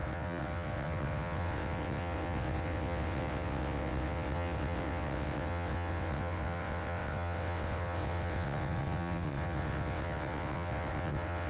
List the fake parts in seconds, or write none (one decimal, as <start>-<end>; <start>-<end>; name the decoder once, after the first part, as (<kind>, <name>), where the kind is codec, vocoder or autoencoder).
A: 0.0-11.5 (vocoder, WaveNeXt)